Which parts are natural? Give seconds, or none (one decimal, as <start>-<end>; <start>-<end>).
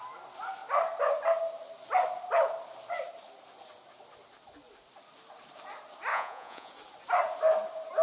0.0-6.1; 6.7-8.0